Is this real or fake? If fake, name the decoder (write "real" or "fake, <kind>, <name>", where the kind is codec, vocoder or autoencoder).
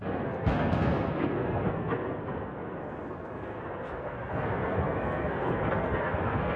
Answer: fake, codec, SNAC